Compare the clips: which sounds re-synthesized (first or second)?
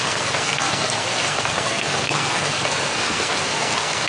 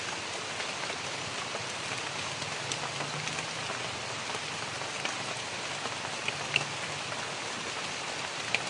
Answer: first